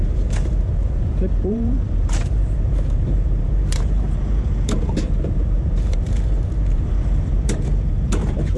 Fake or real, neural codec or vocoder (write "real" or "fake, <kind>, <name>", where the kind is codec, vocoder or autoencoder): fake, vocoder, BigVGAN v2